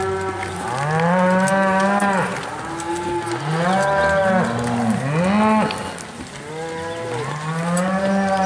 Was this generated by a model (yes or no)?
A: no